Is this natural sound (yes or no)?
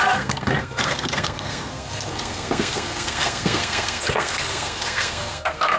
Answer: no